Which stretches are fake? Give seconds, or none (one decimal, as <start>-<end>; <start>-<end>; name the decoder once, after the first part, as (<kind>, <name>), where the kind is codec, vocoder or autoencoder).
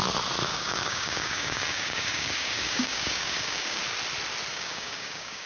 0.5-3.8 (codec, DAC); 4.5-5.5